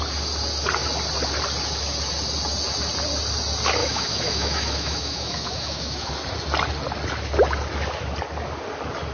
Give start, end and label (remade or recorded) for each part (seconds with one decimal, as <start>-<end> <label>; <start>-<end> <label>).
0.0-3.8 recorded; 3.8-6.1 remade; 6.1-9.1 recorded